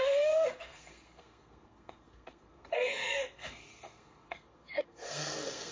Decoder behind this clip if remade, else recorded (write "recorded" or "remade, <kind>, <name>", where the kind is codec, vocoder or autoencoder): remade, codec, SNAC